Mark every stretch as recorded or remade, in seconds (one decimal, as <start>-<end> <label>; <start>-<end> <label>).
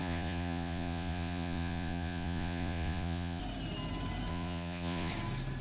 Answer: 0.0-3.4 remade; 3.4-4.3 recorded; 4.3-5.1 remade; 5.1-5.6 recorded